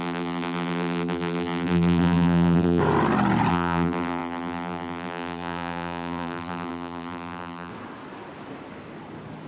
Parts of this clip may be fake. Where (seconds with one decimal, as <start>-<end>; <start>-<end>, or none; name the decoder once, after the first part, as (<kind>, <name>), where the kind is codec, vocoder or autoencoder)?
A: 0.0-2.8 (vocoder, BigVGAN v2); 3.5-7.7